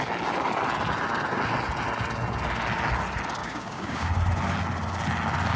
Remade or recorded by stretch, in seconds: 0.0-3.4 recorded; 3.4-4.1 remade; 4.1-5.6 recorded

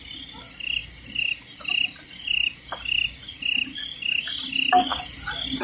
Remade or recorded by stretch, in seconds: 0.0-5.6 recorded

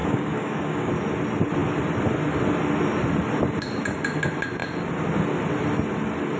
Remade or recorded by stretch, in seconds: 0.0-0.9 remade; 0.9-6.4 recorded